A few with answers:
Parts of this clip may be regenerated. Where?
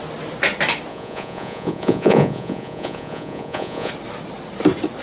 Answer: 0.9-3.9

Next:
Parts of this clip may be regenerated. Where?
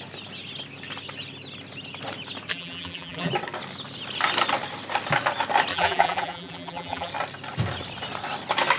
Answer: 2.5-3.3; 5.7-7.1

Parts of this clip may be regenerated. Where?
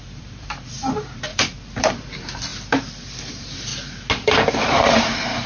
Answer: 0.0-1.3; 1.8-2.5; 3.3-3.7; 4.5-5.5